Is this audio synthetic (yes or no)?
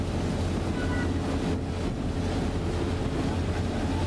no